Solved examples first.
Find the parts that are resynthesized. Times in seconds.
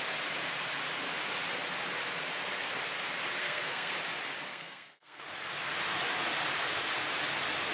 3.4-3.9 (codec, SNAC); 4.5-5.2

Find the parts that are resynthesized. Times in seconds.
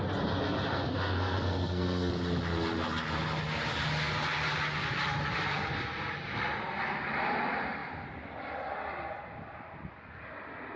0.7-2.1 (codec, SNAC)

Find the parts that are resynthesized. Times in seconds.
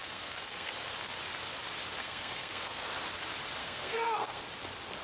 0.0-0.7 (codec, SNAC); 2.0-2.9; 3.6-4.4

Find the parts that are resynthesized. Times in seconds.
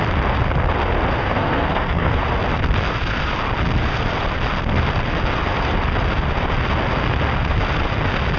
1.2-2.2 (codec, SNAC)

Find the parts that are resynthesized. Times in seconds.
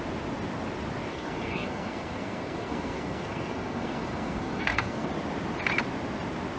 1.1-5.1 (codec, SNAC)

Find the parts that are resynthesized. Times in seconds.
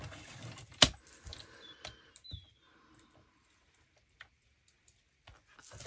none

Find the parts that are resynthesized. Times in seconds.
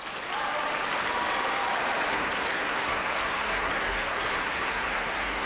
2.1-5.5 (codec, SNAC)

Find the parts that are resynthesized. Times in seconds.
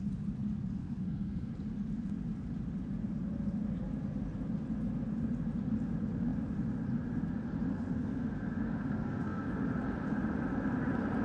0.8-1.5 (codec, SNAC); 7.7-9.5